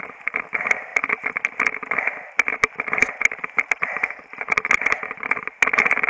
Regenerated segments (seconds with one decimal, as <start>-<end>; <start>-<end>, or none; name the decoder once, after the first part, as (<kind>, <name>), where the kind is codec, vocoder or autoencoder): none